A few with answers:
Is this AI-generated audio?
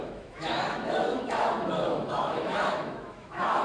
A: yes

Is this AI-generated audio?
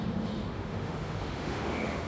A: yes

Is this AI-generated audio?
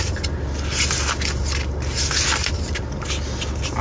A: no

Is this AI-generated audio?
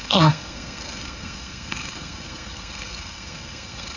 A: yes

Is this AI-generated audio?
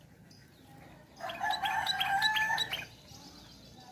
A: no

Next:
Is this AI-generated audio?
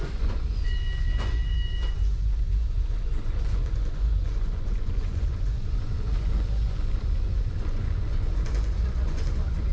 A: yes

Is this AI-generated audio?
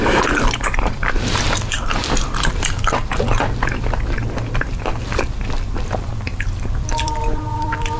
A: yes